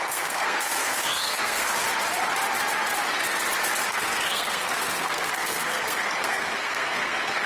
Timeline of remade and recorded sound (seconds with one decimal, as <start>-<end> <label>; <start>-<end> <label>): 0.0-1.7 remade; 1.7-3.9 recorded; 3.9-7.5 remade

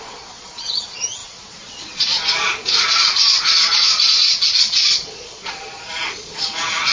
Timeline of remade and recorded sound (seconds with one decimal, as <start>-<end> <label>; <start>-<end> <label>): 0.0-6.9 remade

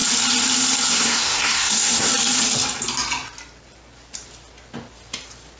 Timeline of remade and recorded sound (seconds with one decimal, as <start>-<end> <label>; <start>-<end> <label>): 0.0-0.9 recorded; 0.9-2.1 remade; 2.1-5.6 recorded